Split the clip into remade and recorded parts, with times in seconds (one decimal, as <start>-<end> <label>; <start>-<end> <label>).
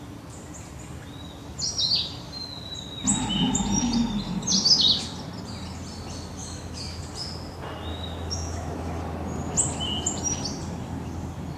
0.0-6.4 recorded; 6.4-7.0 remade; 7.0-7.9 recorded; 7.9-9.0 remade; 9.0-11.6 recorded